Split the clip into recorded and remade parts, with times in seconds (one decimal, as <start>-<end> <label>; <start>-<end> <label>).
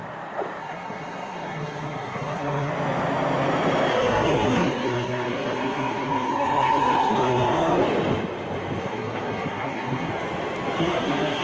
0.0-0.6 recorded; 0.6-2.7 remade; 2.7-3.9 recorded; 3.9-7.8 remade; 7.8-8.8 recorded; 8.8-10.1 remade; 10.1-10.8 recorded; 10.8-11.4 remade